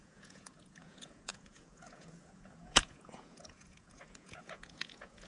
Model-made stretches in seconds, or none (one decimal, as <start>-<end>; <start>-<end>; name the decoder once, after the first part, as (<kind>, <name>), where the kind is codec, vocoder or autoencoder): 0.0-5.3 (vocoder, Vocos)